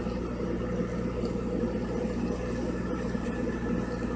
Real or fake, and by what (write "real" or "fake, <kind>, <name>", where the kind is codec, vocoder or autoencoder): real